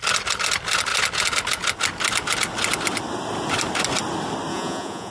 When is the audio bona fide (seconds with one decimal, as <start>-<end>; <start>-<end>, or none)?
0.0-4.5